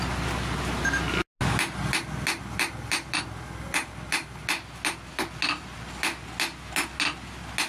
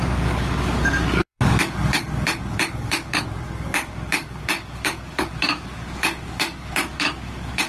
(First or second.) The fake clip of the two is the second